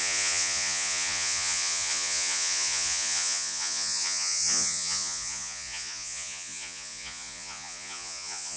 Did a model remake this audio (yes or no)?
yes